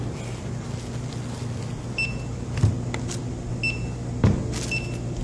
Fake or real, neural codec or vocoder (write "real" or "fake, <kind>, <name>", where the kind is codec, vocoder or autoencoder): real